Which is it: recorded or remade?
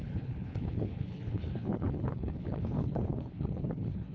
remade